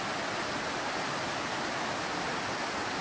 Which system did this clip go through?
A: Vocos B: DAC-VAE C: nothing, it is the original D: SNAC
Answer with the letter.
C